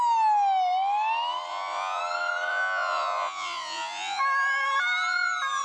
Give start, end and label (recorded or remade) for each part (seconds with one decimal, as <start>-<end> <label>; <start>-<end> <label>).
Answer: 0.0-1.5 recorded; 1.5-2.0 remade; 2.0-2.5 recorded; 2.5-4.2 remade; 4.2-5.6 recorded